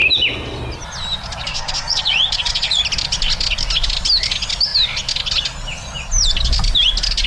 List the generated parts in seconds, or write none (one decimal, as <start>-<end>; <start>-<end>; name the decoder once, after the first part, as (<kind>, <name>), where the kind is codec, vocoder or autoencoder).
1.5-2.8 (vocoder, Vocos)